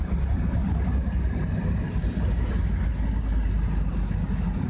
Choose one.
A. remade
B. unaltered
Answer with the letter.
B